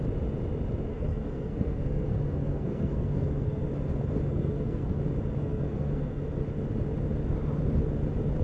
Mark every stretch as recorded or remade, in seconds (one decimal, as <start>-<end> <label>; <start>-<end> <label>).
0.0-0.9 recorded; 0.9-3.7 remade; 3.7-4.3 recorded; 4.3-5.0 remade; 5.0-5.4 recorded; 5.4-6.2 remade; 6.2-8.4 recorded